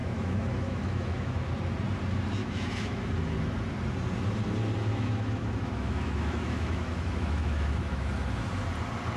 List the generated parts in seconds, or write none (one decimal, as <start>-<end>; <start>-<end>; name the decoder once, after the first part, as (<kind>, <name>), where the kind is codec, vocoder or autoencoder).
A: 0.0-1.5 (autoencoder, DAC-VAE); 2.4-3.1; 4.9-8.1

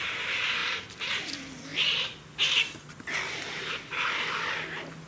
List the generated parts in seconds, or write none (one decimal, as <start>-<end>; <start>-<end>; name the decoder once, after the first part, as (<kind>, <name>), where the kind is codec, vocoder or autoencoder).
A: none

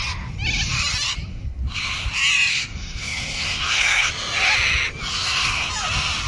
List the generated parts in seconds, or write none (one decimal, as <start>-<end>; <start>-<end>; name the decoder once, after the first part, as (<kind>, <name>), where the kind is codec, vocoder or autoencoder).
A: 1.3-2.1 (codec, SNAC); 2.5-4.1; 5.1-5.7